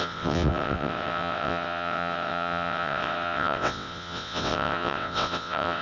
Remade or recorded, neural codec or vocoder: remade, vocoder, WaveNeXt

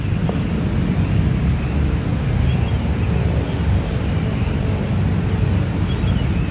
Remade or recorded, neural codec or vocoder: recorded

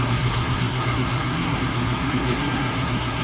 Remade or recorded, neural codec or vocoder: remade, codec, SNAC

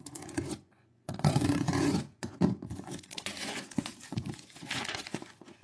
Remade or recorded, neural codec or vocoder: remade, vocoder, Vocos